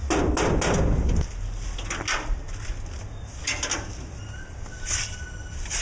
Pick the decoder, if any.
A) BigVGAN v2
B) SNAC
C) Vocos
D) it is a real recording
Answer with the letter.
D